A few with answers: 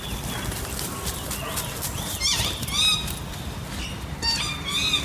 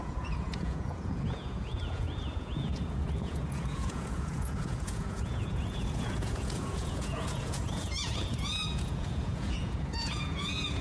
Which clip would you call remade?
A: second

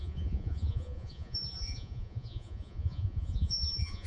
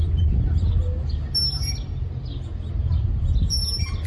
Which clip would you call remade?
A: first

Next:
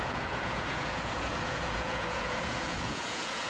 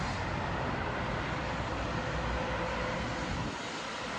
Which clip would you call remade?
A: first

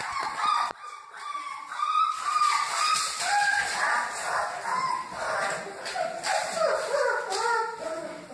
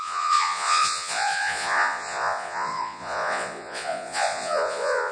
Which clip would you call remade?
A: second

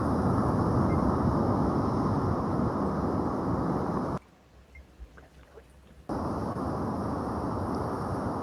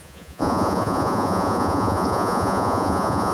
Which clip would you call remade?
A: second